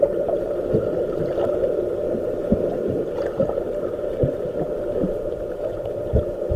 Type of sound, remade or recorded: remade